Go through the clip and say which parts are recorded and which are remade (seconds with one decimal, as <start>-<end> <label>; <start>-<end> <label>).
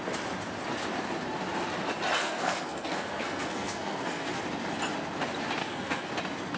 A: 0.0-2.2 recorded; 2.2-4.4 remade; 4.4-5.6 recorded; 5.6-6.1 remade; 6.1-6.6 recorded